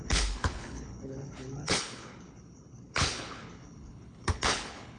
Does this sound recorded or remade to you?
remade